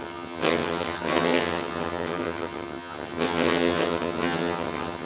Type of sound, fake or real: fake